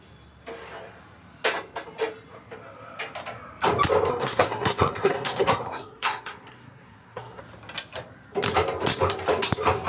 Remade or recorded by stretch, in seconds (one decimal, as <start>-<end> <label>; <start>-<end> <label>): 0.0-4.1 recorded; 4.1-7.4 remade; 7.4-9.9 recorded